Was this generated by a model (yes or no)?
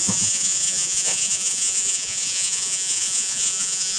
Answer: yes